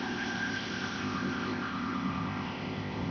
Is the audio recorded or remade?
remade